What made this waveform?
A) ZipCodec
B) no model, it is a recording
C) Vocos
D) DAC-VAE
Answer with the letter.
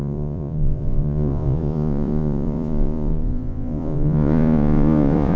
C